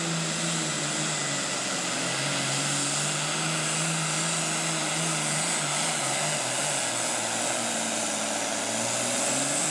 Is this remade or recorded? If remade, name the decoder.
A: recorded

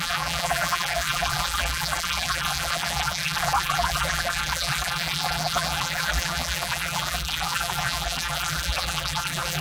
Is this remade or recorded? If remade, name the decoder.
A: remade, vocoder, BigVGAN v2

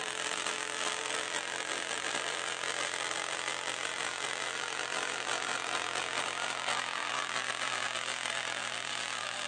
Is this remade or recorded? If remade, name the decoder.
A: remade, vocoder, BigVGAN v2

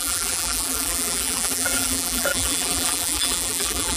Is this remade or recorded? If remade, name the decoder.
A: remade, vocoder, BigVGAN v2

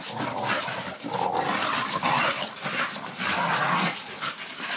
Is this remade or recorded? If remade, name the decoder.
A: recorded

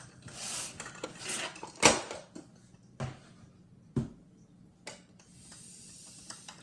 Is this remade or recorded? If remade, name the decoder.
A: recorded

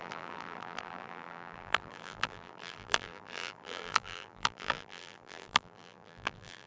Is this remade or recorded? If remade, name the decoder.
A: remade, vocoder, BigVGAN v2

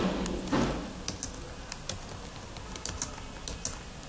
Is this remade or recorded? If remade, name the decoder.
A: recorded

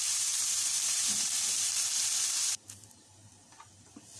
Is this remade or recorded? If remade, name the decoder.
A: remade, vocoder, BigVGAN v2